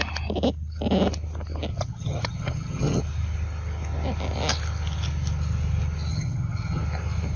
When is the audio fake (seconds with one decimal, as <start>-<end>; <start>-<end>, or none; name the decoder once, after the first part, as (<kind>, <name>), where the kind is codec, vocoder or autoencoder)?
1.7-3.0 (vocoder, HiFi-GAN); 6.1-6.8